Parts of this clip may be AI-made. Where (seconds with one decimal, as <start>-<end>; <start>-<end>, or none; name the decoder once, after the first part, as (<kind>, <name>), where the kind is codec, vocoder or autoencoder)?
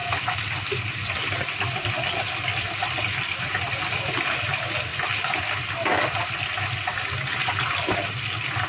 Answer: 0.0-3.4 (vocoder, BigVGAN v2)